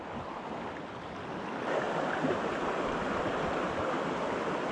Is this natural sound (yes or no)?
yes